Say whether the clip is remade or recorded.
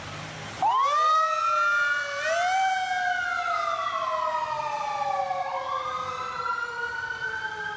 recorded